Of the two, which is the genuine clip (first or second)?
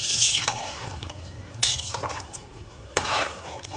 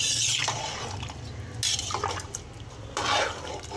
second